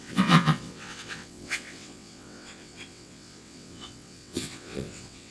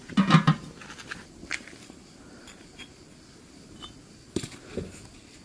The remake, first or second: first